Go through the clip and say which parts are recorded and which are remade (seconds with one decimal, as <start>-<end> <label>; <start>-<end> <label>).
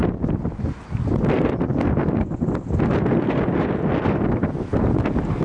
0.0-5.4 recorded